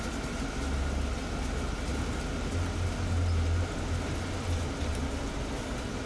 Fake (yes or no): no